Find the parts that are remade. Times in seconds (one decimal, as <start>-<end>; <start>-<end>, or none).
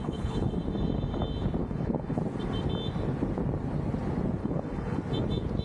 0.0-0.5; 1.6-2.2; 4.4-5.0